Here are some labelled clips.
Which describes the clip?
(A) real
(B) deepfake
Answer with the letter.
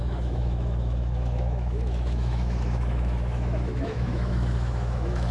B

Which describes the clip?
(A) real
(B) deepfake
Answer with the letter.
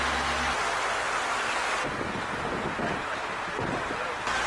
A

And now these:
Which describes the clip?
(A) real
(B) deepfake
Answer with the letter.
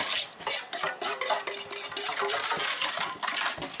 A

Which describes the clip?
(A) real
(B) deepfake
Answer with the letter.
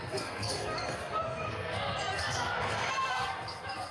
B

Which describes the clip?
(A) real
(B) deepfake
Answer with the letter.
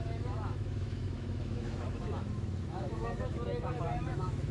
B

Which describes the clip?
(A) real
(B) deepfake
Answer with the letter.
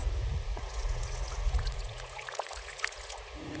B